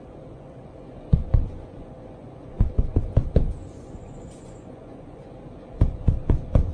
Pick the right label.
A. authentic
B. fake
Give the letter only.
B